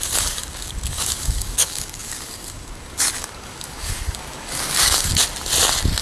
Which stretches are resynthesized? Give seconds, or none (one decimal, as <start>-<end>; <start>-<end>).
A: 0.0-5.1